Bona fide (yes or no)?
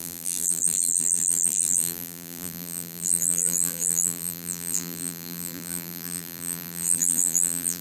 no